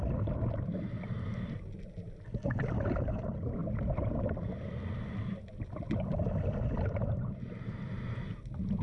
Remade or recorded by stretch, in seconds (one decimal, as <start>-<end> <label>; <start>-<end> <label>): 0.0-8.8 recorded